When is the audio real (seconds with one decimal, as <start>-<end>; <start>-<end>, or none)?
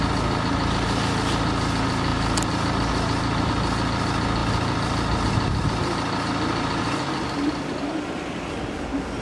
0.0-9.2